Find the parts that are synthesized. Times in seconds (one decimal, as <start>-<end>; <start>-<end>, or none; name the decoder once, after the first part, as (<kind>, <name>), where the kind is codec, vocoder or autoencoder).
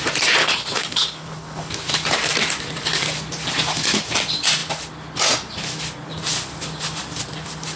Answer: 0.4-1.7 (codec, HILCodec)